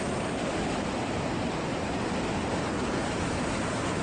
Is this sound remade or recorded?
recorded